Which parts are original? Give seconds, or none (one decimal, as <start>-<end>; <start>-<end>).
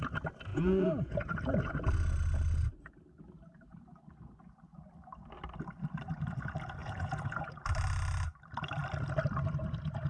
0.0-0.5; 1.2-6.8; 7.6-10.1